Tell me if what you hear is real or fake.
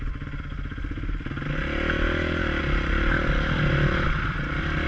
real